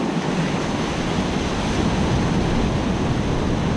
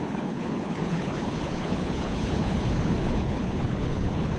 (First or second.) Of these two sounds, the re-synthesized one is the second